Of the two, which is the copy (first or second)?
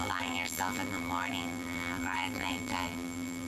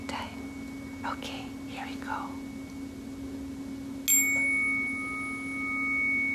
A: first